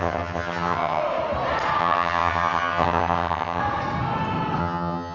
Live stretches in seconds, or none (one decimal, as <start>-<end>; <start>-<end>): 1.0-1.8; 3.6-4.6

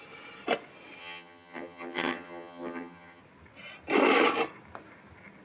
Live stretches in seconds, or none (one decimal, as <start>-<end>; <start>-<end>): 0.0-1.0; 3.2-5.4

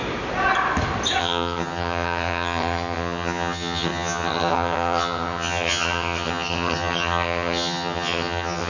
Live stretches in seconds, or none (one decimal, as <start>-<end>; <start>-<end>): 0.0-1.2

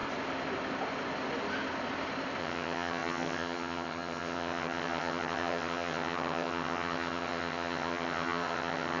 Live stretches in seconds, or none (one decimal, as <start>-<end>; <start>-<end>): 0.0-2.4

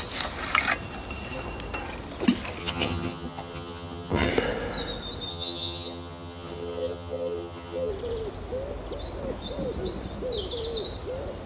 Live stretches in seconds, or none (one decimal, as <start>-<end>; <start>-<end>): 0.0-2.6; 4.3-5.3; 7.9-11.5

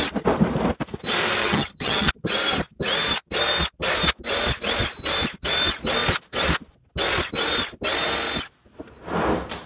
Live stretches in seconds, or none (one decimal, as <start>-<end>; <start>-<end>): 0.0-1.4; 2.1-9.7